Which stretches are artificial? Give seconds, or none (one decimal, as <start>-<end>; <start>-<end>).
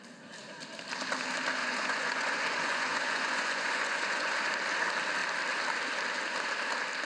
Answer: 1.6-4.4